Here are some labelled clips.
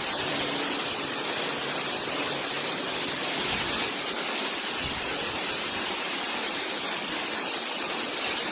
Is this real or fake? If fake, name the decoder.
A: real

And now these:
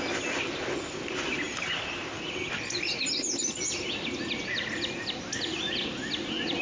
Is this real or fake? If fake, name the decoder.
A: real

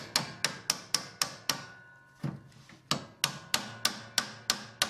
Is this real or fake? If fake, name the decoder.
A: real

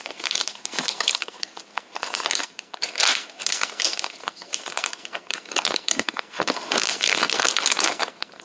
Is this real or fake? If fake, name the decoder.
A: fake, codec, SNAC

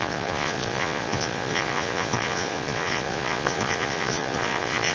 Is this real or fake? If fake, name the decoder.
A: fake, vocoder, Vocos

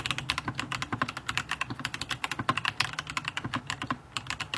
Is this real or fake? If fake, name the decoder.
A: real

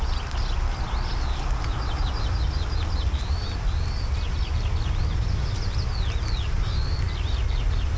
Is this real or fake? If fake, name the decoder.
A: real